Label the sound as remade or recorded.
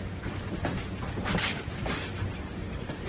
recorded